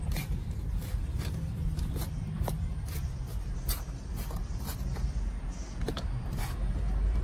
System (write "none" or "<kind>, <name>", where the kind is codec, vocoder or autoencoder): vocoder, BigVGAN v2